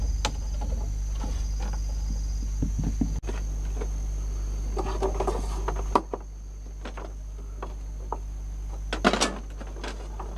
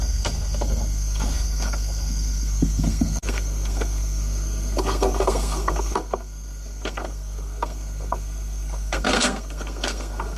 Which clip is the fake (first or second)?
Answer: second